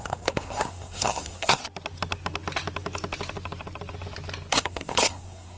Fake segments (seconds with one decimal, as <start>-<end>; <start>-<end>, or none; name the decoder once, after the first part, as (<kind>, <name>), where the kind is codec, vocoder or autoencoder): 0.0-1.6 (codec, SNAC); 4.5-5.6